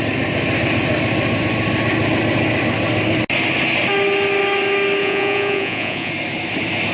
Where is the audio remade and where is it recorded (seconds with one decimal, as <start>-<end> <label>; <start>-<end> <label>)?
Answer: 0.0-5.0 recorded; 5.0-6.1 remade; 6.1-6.9 recorded